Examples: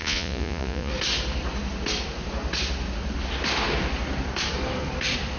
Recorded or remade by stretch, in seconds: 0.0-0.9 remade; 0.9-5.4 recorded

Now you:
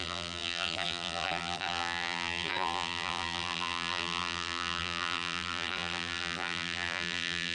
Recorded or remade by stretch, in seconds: 0.0-7.5 remade